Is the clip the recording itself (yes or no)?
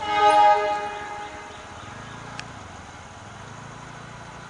yes